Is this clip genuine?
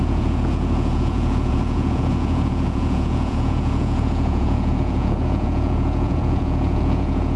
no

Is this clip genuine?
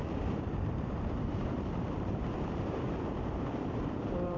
no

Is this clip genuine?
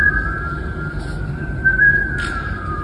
no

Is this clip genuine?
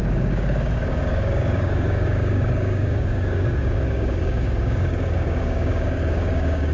no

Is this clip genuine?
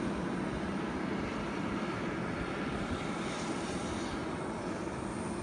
yes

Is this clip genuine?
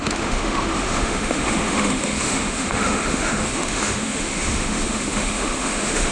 no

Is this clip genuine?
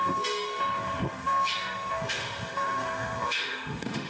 no